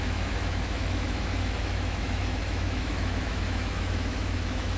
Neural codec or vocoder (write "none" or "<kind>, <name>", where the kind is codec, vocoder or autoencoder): autoencoder, DAC-VAE